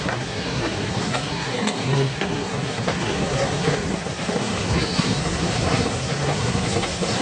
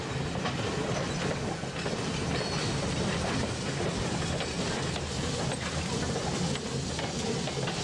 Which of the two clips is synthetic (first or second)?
first